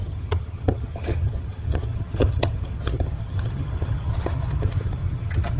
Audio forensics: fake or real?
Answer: fake